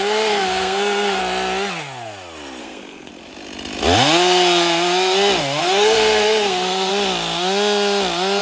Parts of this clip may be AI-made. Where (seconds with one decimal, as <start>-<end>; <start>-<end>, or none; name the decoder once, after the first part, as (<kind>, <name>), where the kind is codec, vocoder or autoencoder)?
0.0-1.2 (codec, SNAC); 2.6-3.1; 5.6-6.9